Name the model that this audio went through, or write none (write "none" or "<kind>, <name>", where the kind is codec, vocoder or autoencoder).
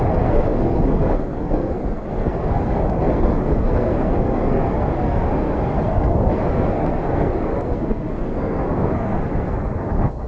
codec, SNAC